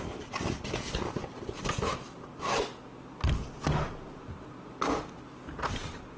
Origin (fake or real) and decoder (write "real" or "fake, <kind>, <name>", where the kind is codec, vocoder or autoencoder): real